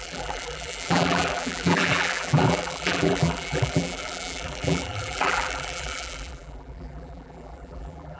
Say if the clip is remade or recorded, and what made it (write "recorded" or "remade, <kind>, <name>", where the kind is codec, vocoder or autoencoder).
remade, vocoder, BigVGAN v2